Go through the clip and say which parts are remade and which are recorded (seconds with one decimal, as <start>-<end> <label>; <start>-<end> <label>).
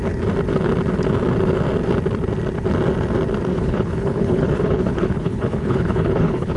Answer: 0.0-3.5 recorded; 3.5-6.6 remade